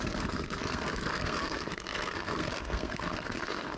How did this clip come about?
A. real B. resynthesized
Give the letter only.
B